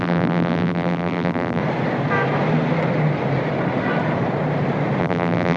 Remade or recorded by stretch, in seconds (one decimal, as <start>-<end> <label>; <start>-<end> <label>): 0.0-1.6 remade; 1.6-5.0 recorded; 5.0-5.6 remade

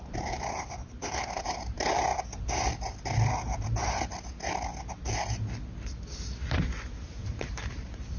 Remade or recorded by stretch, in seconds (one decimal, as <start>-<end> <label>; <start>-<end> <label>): 0.0-2.1 remade; 2.1-6.4 recorded; 6.4-8.2 remade

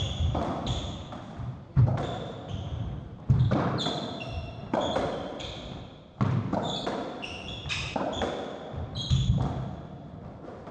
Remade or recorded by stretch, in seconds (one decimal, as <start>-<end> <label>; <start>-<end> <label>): 0.0-10.7 recorded

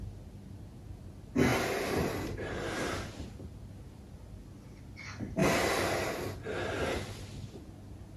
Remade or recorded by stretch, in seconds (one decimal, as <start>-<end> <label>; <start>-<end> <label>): 0.0-1.5 recorded; 1.5-3.1 remade; 3.1-8.2 recorded

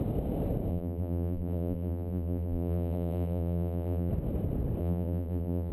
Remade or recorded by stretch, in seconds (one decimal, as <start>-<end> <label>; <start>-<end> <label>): 0.0-0.7 recorded; 0.7-4.1 remade; 4.1-4.8 recorded; 4.8-5.7 remade

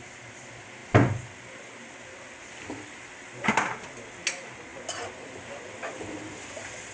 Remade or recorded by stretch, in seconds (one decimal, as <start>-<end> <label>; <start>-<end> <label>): 0.0-6.9 recorded

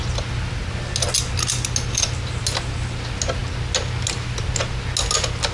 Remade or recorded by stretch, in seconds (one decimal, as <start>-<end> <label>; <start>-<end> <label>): 0.0-5.5 recorded

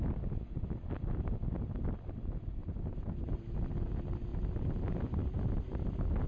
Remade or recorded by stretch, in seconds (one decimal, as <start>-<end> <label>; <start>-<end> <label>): 0.0-2.6 recorded; 2.6-3.8 remade; 3.8-4.3 recorded; 4.3-6.3 remade